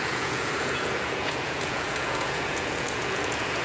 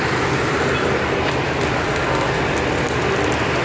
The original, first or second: second